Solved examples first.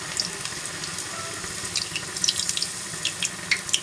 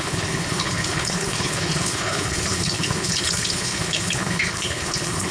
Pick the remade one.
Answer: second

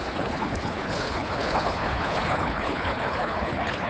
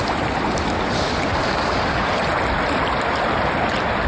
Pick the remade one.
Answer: first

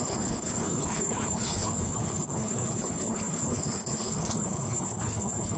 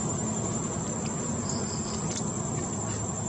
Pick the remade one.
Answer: first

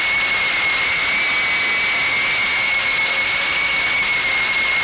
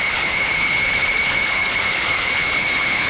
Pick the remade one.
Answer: second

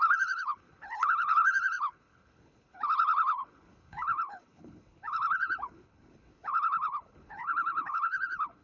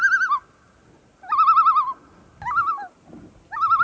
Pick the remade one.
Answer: first